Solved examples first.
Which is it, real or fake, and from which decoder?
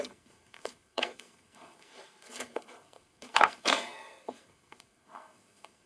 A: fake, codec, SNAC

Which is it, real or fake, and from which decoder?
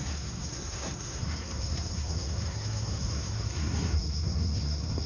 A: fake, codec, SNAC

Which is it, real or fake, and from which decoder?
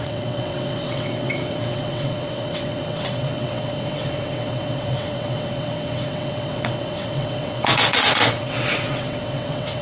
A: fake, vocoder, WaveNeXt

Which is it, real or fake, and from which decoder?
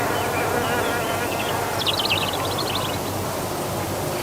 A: real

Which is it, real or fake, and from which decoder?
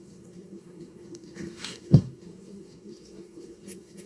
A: fake, codec, SNAC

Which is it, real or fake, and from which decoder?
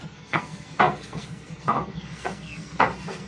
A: fake, codec, SNAC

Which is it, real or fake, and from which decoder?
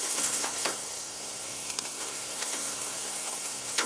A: fake, codec, SNAC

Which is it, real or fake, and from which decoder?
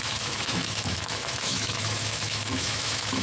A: fake, autoencoder, DAC-VAE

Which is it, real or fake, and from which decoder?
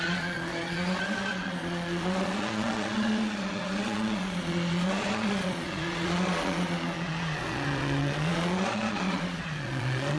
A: fake, vocoder, Vocos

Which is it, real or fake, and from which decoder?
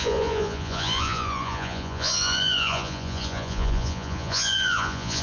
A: fake, vocoder, Vocos